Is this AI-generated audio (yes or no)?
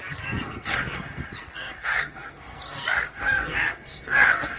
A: yes